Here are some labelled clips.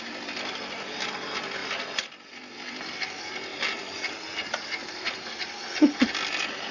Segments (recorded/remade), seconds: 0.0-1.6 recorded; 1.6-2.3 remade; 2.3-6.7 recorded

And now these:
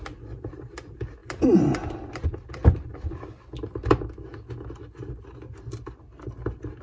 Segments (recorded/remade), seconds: 0.0-6.8 recorded

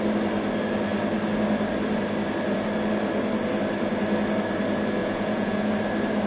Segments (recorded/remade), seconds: 0.0-5.0 recorded; 5.0-5.7 remade; 5.7-6.3 recorded

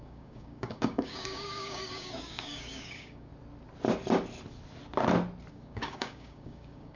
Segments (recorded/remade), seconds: 0.0-3.3 remade; 3.3-5.5 recorded; 5.5-7.0 remade